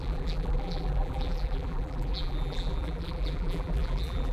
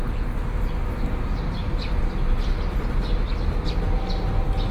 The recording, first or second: second